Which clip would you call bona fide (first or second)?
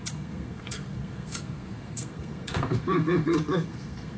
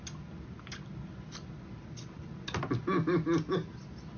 second